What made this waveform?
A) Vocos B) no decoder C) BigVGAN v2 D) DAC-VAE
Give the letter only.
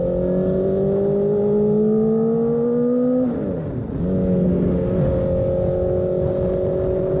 B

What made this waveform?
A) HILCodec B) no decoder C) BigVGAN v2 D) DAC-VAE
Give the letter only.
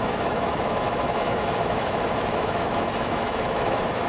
D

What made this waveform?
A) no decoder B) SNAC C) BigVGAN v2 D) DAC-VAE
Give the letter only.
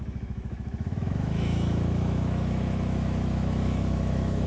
D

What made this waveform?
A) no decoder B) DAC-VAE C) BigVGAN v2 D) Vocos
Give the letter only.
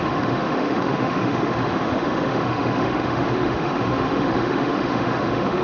B